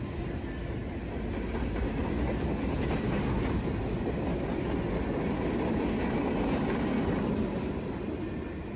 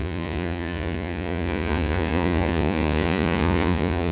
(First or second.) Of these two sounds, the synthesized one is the second